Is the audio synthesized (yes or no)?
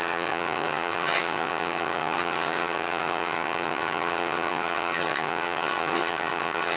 yes